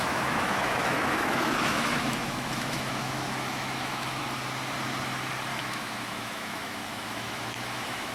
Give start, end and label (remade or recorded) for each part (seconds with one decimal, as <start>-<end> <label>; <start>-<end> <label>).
0.0-4.2 remade; 4.2-5.5 recorded; 5.5-8.1 remade